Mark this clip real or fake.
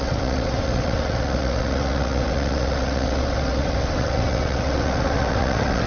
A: fake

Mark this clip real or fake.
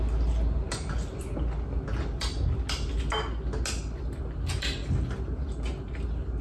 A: real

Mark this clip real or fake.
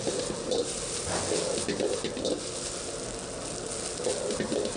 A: real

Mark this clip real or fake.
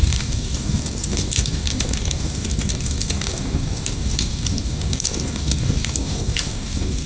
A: fake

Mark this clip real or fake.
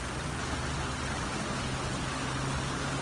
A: real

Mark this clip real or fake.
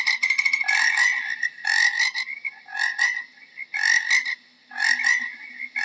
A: real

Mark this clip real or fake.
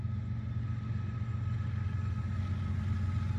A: real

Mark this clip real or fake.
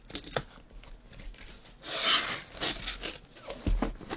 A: real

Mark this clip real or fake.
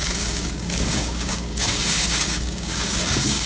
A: fake